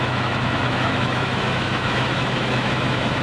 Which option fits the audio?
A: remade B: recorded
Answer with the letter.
A